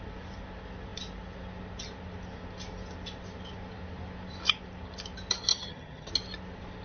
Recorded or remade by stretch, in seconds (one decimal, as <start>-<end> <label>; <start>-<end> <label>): 0.0-5.5 recorded; 5.5-6.1 remade; 6.1-6.8 recorded